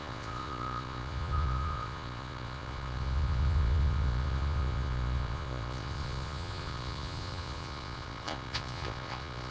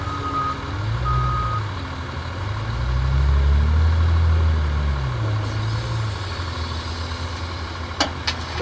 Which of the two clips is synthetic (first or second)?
first